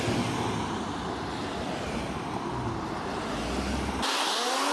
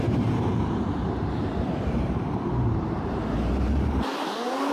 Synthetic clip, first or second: second